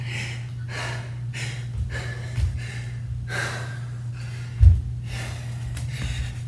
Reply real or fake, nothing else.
real